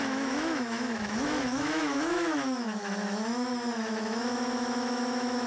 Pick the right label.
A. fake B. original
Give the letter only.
A